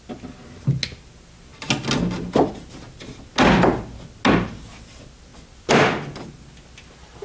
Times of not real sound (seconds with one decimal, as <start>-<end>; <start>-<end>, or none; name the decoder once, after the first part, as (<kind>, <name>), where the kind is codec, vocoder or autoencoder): none